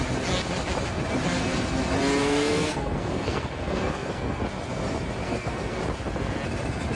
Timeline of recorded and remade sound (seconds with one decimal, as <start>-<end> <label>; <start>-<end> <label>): 0.0-2.2 recorded; 2.2-4.4 remade; 4.4-5.2 recorded; 5.2-5.8 remade; 5.8-7.0 recorded